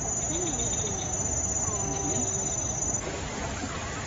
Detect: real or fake real